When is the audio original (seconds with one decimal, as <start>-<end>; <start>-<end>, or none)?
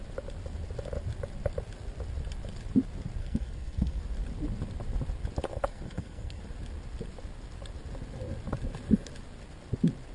0.0-3.2; 4.0-5.5; 6.4-10.1